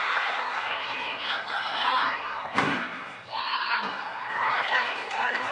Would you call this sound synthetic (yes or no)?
yes